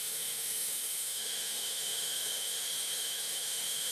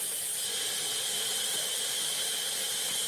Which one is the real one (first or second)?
second